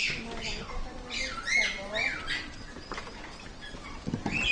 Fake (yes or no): no